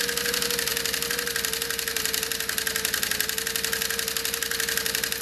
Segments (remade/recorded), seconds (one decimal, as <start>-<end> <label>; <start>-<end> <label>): 0.0-5.2 recorded